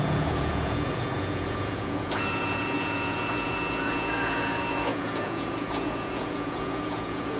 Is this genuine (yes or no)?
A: no